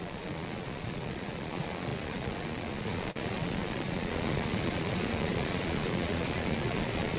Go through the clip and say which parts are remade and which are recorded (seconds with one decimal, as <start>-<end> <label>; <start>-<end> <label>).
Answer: 0.0-7.2 remade